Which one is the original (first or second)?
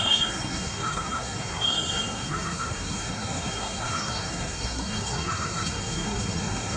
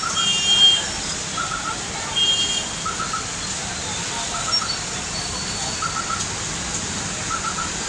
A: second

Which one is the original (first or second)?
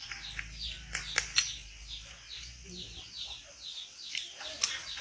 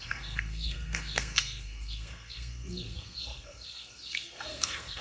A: first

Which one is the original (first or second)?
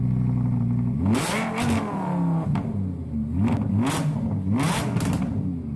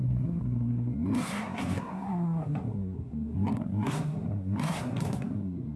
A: first